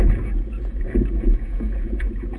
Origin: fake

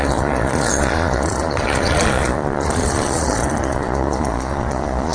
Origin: fake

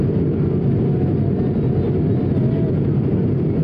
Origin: real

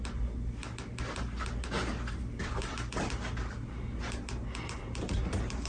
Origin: real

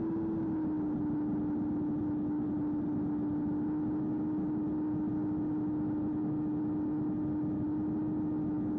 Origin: real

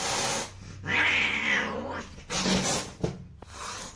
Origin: real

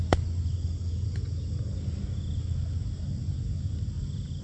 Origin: real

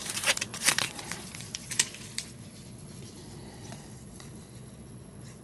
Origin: fake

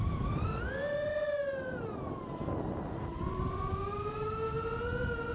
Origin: real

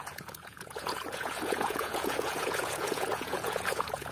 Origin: fake